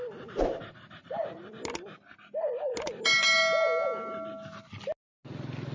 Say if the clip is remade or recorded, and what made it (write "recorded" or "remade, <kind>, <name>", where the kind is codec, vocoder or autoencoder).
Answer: recorded